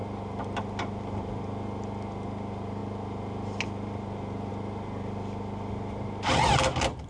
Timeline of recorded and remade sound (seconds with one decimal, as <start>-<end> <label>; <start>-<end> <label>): 0.0-7.1 recorded